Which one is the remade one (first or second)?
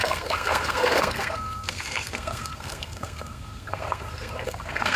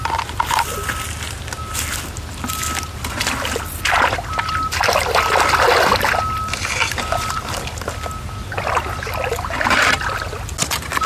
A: first